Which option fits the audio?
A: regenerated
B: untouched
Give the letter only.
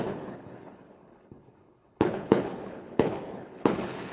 A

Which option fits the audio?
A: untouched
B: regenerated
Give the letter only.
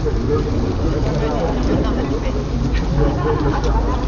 A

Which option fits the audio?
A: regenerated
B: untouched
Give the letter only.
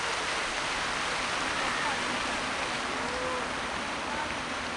B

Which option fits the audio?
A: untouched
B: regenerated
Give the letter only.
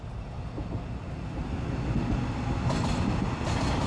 A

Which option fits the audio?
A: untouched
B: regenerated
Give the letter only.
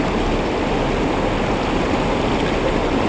A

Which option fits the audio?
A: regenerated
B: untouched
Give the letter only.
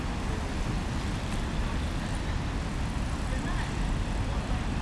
B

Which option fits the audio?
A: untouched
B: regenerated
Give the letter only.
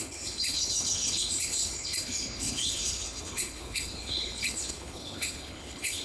B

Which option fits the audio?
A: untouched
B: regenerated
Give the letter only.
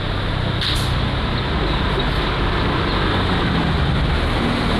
A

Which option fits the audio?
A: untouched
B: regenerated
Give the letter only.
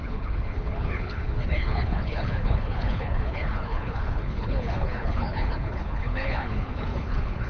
B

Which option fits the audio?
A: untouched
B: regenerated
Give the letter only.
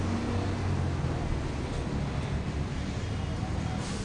A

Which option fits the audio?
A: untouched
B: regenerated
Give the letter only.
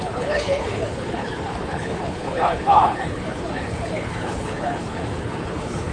B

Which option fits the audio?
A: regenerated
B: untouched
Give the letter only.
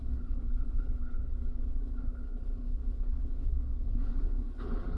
A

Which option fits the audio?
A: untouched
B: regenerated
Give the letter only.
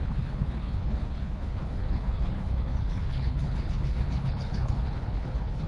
B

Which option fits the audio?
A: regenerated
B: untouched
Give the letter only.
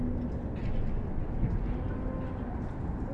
B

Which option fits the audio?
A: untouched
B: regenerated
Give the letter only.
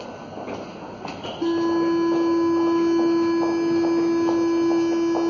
A